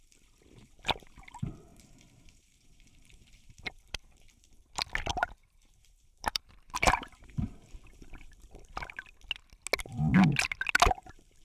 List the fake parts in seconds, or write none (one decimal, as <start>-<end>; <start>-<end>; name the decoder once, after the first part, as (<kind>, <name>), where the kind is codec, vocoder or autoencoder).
1.7-4.6 (vocoder, BigVGAN v2); 5.1-8.5